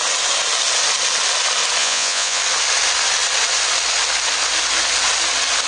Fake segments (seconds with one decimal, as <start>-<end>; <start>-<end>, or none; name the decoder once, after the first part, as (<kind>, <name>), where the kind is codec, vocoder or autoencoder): 1.8-2.4 (vocoder, Vocos)

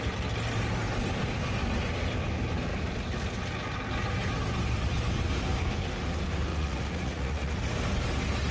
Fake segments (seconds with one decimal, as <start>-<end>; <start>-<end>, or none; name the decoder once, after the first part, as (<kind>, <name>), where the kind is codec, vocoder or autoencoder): 6.5-7.5 (vocoder, Vocos)

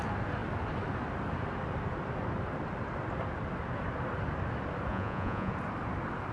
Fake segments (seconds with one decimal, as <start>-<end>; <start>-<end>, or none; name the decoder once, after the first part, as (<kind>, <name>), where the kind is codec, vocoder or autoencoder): 4.9-5.5 (vocoder, Vocos)

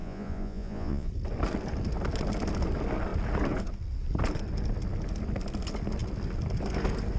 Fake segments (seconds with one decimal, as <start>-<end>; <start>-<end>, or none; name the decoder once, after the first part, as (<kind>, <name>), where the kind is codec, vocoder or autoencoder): 0.0-1.1 (vocoder, Vocos)

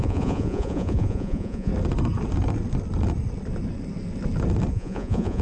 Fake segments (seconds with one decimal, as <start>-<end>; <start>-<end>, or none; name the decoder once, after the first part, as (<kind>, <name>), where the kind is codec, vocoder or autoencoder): 0.0-1.7 (vocoder, Vocos); 4.7-5.4

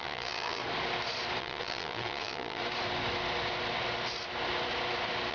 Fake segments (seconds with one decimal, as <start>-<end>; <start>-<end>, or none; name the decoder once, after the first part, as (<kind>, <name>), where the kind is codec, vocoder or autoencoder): 0.0-0.6 (vocoder, Vocos); 1.4-2.6

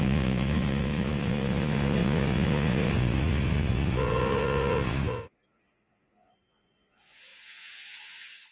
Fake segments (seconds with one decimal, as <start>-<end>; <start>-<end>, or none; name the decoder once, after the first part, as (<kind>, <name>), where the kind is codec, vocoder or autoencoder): 0.0-8.5 (vocoder, Vocos)

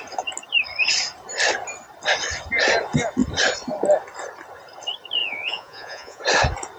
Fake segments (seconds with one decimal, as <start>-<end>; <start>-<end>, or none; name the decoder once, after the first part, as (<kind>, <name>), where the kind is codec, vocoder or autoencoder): 5.2-6.2 (vocoder, Vocos)